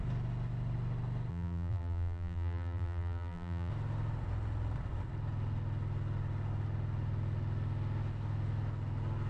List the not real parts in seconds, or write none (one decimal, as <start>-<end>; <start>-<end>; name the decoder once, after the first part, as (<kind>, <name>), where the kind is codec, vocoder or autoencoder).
1.3-3.7 (vocoder, BigVGAN v2)